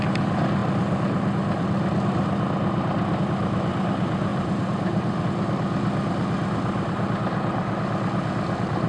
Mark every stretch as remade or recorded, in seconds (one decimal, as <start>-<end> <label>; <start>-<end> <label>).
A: 0.0-4.3 recorded; 4.3-5.2 remade; 5.2-8.9 recorded